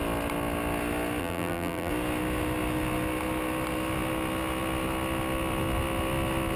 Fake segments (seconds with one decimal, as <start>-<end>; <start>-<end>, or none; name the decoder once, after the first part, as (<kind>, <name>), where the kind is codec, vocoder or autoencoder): 1.2-1.9 (vocoder, BigVGAN v2)